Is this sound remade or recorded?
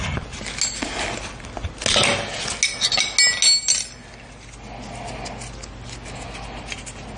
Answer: recorded